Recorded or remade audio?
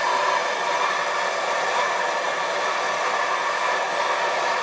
recorded